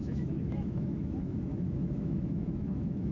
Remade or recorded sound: remade